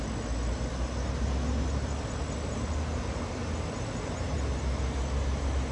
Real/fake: real